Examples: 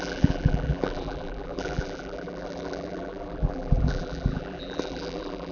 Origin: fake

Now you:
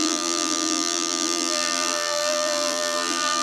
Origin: fake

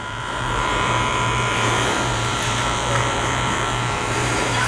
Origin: fake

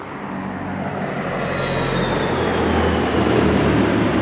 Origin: real